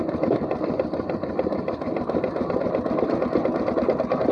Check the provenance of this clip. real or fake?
fake